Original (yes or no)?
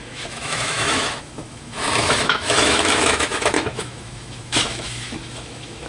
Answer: no